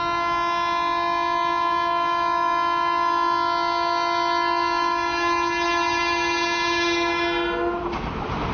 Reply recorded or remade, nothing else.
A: recorded